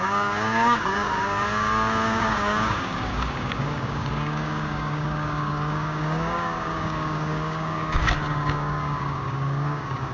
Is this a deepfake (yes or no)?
yes